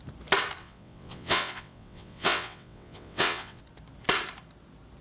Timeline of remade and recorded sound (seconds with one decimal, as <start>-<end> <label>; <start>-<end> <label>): 0.0-0.6 recorded; 0.6-3.6 remade; 3.6-5.0 recorded